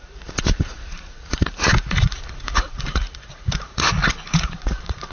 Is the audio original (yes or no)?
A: no